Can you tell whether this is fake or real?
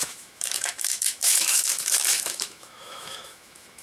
fake